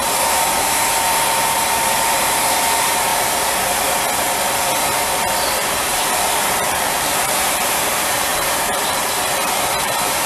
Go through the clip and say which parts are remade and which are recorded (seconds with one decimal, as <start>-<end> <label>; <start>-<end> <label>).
0.0-3.1 remade; 3.1-5.5 recorded; 5.5-10.3 remade